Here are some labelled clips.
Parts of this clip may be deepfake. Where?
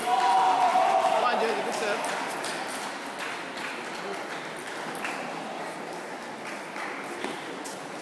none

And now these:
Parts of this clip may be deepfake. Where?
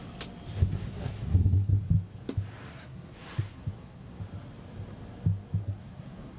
0.6-1.8 (codec, SNAC); 2.7-4.2; 5.6-6.4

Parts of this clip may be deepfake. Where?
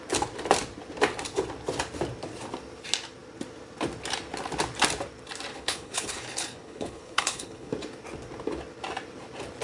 5.5-7.7 (codec, HILCodec)